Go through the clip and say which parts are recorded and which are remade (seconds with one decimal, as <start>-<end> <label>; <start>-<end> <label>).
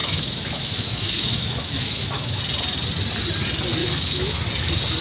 0.0-2.4 remade; 2.4-3.8 recorded; 3.8-4.4 remade; 4.4-5.0 recorded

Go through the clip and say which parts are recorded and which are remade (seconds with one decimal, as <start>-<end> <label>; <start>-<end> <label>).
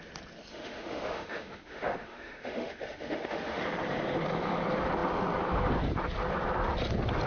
0.0-0.5 recorded; 0.5-3.6 remade; 3.6-7.3 recorded